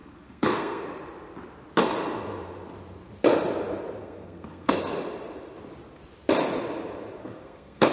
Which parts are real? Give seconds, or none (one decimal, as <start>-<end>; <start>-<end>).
0.8-4.0; 4.7-7.2